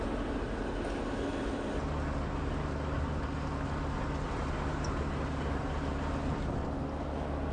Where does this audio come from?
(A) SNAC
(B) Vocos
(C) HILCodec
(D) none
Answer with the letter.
D